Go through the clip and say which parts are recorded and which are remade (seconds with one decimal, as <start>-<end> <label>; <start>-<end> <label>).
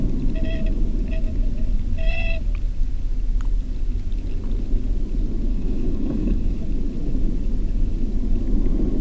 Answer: 0.0-5.5 recorded; 5.5-6.6 remade; 6.6-9.0 recorded